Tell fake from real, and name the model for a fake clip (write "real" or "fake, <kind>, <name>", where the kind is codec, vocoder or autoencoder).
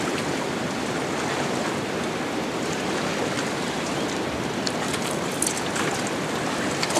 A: real